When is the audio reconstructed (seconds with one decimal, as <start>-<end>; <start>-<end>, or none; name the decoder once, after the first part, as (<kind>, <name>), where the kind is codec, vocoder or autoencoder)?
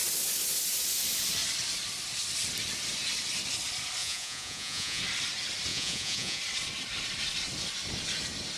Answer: 4.0-5.0 (vocoder, Vocos); 5.7-6.4